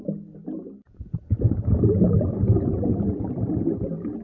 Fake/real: real